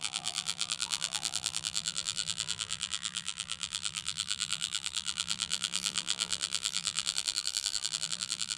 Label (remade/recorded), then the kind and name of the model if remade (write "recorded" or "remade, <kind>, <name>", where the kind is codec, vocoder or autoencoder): remade, vocoder, BigVGAN v2